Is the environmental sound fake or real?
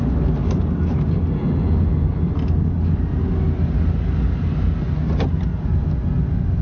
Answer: real